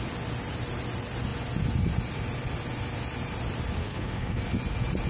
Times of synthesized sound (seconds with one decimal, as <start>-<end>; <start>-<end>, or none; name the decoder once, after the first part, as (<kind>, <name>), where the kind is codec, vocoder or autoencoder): 3.8-4.4 (codec, SNAC)